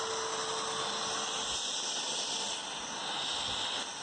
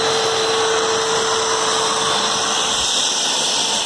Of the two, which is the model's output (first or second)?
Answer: second